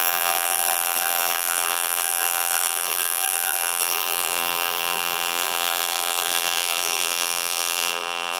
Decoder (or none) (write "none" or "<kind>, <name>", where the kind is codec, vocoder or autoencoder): vocoder, BigVGAN v2